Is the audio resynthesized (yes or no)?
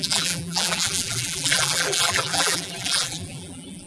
yes